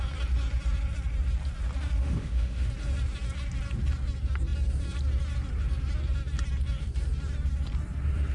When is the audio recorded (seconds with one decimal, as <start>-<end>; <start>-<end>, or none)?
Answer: 0.0-2.0; 2.7-8.3